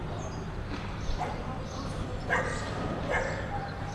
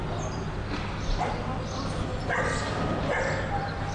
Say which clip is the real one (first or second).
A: second